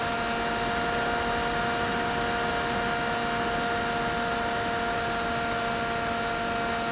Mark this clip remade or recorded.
recorded